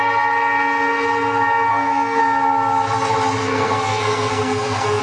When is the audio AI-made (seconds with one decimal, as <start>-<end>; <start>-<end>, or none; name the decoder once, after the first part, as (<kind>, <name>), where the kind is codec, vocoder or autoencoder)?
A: 1.7-2.2 (codec, SNAC); 3.4-5.0